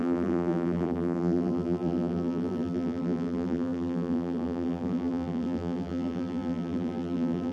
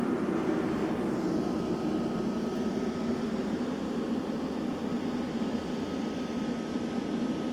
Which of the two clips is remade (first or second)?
first